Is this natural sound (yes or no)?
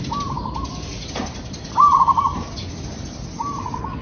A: yes